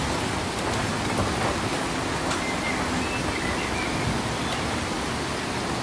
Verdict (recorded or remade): recorded